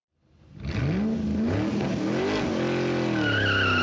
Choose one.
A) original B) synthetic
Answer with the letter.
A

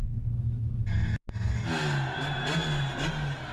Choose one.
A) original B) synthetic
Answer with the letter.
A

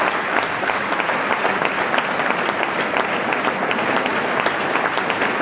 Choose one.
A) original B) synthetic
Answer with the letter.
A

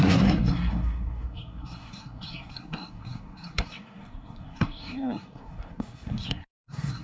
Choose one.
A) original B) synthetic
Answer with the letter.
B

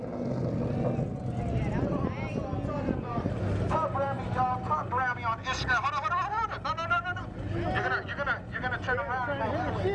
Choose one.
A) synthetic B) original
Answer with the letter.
B